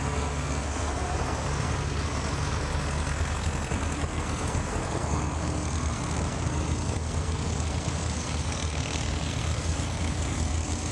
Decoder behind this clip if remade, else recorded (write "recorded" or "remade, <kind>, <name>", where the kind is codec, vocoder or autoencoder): remade, codec, SNAC